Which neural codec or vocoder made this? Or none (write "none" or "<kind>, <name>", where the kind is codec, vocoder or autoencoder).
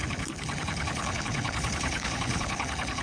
codec, HILCodec